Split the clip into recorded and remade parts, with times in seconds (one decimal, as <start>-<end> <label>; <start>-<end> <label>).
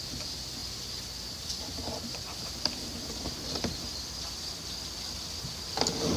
0.0-6.2 recorded